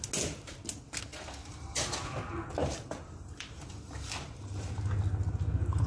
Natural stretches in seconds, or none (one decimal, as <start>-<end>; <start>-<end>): 0.0-1.1; 1.9-2.6; 4.7-5.9